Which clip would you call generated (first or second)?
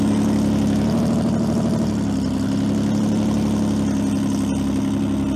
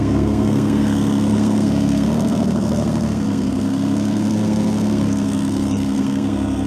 second